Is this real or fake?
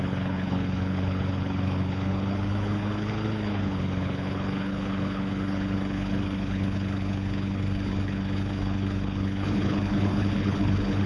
fake